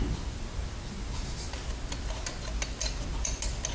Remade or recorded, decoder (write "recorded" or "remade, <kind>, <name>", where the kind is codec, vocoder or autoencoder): recorded